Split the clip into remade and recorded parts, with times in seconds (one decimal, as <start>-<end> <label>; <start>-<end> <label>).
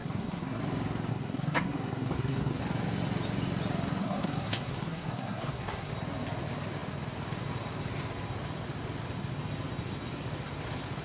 0.0-0.6 remade; 0.6-1.1 recorded; 1.1-2.6 remade; 2.6-4.0 recorded; 4.0-5.9 remade; 5.9-11.0 recorded